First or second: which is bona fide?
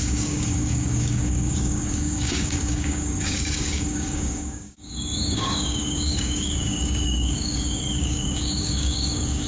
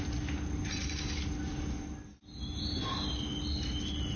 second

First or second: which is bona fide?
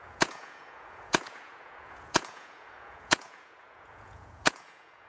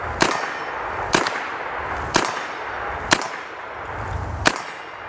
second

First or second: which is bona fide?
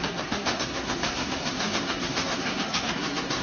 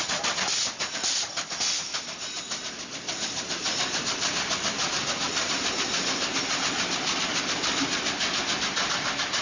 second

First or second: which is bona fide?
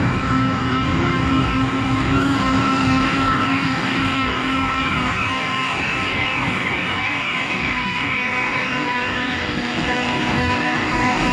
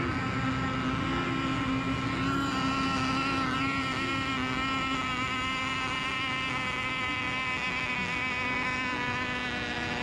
second